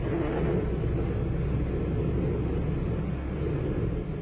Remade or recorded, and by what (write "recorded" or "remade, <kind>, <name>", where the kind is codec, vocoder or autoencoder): recorded